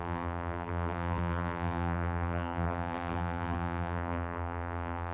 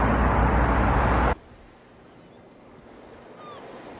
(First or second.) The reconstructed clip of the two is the first